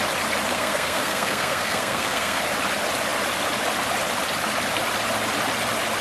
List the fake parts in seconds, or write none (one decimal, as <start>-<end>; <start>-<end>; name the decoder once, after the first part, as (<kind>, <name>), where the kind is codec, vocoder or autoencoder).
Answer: 0.5-2.4 (codec, SNAC)